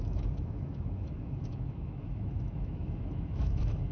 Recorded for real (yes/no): no